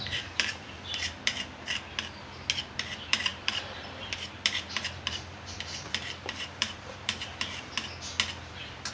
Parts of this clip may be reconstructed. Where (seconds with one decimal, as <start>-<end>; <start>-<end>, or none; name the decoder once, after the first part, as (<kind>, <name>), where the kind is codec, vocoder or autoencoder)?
0.0-1.3 (vocoder, BigVGAN v2); 2.7-7.3; 8.5-8.9

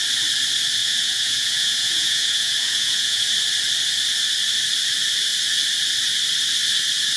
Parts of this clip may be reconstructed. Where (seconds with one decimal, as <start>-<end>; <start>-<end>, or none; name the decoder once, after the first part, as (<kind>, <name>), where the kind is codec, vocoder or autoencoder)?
0.8-3.3 (vocoder, Vocos)